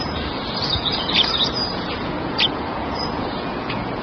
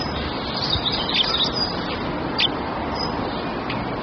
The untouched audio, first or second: second